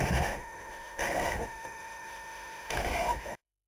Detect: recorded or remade remade